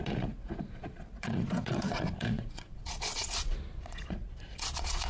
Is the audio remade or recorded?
remade